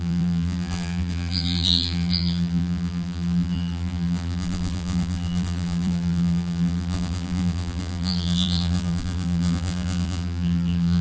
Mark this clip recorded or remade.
remade